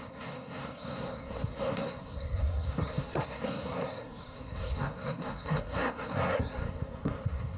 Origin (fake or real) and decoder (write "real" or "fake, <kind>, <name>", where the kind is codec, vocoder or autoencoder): fake, codec, SNAC